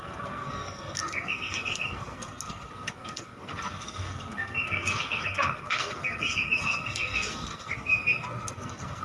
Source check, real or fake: fake